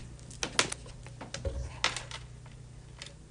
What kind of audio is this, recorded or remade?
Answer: recorded